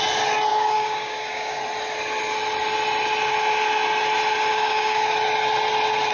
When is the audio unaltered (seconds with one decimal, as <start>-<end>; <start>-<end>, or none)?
0.0-0.5; 1.6-4.5; 5.0-6.1